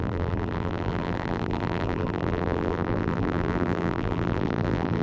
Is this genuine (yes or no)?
no